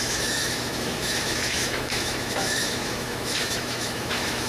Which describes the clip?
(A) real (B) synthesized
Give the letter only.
B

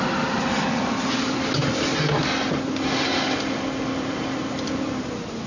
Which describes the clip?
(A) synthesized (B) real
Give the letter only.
B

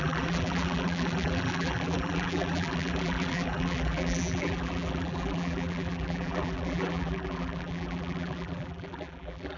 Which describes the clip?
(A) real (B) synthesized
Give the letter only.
B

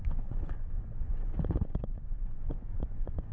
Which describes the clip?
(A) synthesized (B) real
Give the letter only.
A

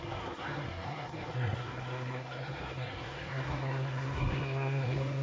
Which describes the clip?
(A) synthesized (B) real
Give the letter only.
A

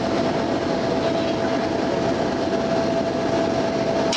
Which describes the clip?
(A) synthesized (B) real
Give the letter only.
B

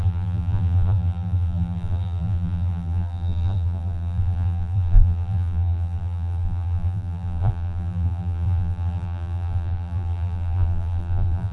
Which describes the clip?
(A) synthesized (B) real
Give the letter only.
A